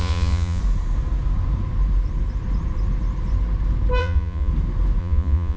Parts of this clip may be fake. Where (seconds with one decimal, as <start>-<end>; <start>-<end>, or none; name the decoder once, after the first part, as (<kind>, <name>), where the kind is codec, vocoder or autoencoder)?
0.0-0.6 (vocoder, Vocos); 4.0-4.5; 5.0-5.6